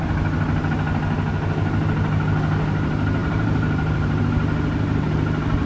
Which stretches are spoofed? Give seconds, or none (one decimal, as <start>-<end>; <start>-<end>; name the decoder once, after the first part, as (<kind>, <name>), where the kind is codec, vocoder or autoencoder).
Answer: 3.2-4.2 (vocoder, BigVGAN v2)